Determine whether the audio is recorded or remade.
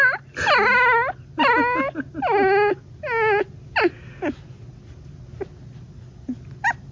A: recorded